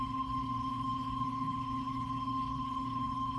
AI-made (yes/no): yes